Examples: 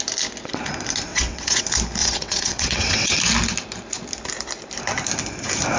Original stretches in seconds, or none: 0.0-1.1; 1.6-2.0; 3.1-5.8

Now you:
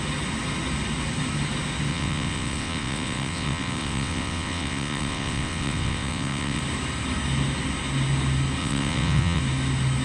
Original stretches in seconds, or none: 0.0-1.9; 6.6-8.6; 9.4-10.0

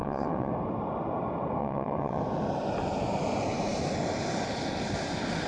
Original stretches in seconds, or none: 0.5-1.6; 2.2-5.5

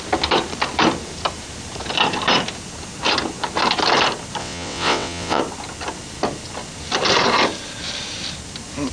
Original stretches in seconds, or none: 0.0-4.4; 5.4-8.9

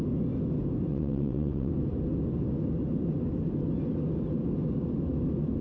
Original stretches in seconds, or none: 0.0-0.9; 1.7-5.6